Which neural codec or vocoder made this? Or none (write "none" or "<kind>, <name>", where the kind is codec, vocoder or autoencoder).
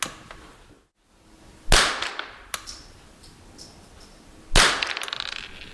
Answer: none